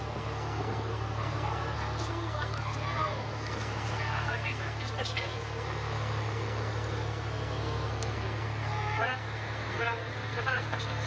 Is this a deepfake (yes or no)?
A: yes